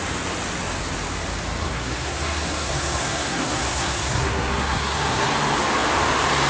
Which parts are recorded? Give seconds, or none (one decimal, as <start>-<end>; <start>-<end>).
0.0-1.6; 5.3-6.5

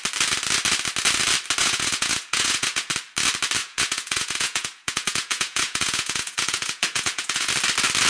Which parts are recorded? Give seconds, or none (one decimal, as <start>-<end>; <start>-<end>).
0.0-1.6; 2.9-3.6; 7.5-8.1